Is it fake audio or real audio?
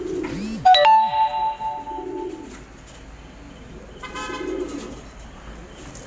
real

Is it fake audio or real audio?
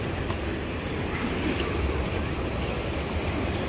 real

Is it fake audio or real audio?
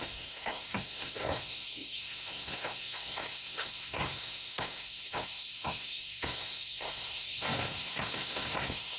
fake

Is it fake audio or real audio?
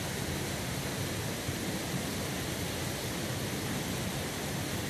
real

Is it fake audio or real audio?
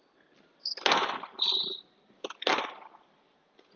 real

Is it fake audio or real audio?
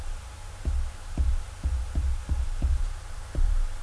fake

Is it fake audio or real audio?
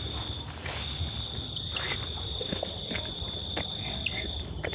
real